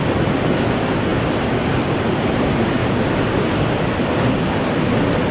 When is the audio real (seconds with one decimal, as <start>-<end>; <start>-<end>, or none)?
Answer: 0.0-5.3